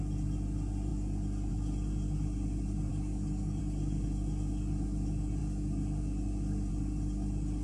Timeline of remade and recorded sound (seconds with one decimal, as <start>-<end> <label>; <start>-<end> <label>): 0.0-2.9 recorded; 2.9-3.6 remade; 3.6-7.6 recorded